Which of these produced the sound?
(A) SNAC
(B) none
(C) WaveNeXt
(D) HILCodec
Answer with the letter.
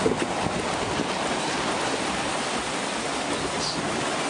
B